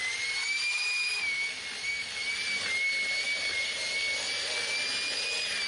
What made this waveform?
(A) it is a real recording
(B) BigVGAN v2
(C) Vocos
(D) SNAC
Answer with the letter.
A